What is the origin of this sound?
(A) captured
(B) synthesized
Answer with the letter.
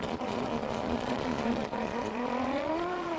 B